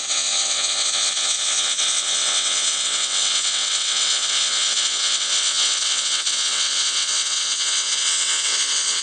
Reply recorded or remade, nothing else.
remade